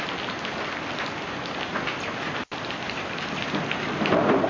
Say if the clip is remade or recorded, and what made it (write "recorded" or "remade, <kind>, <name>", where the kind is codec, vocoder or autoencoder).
recorded